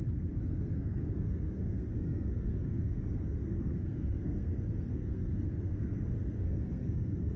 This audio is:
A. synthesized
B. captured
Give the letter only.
A